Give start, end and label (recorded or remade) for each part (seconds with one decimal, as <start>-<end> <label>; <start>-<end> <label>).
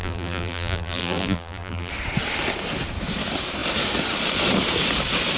0.0-1.9 remade; 1.9-5.4 recorded